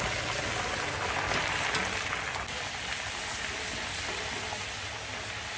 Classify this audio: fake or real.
real